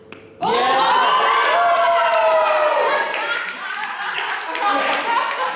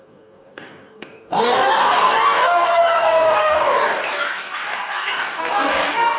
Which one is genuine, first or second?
first